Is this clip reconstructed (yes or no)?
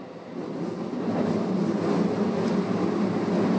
no